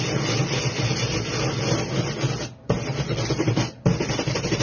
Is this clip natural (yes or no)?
yes